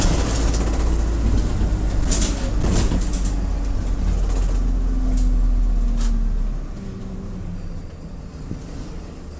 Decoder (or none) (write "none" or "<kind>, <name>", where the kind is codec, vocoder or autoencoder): none